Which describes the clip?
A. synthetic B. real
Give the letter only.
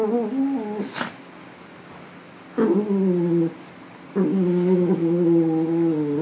B